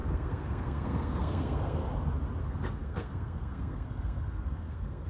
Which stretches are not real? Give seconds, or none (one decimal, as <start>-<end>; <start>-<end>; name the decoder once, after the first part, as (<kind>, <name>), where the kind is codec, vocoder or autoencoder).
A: 0.0-1.8 (codec, SNAC); 2.4-5.1